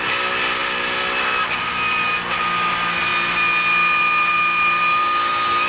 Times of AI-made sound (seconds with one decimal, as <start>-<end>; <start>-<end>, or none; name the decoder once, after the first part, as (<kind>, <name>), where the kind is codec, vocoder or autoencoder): none